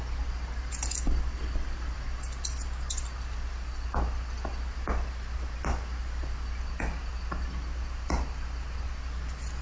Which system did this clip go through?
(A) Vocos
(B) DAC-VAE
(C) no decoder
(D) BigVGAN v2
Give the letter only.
C